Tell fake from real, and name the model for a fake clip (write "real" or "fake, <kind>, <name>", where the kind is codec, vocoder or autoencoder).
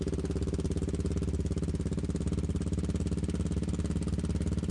real